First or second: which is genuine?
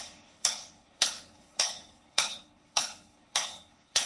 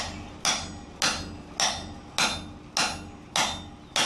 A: second